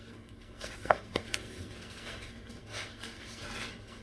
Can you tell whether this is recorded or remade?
remade